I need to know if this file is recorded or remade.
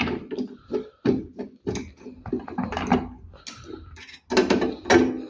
recorded